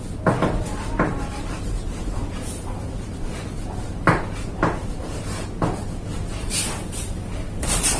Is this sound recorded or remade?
recorded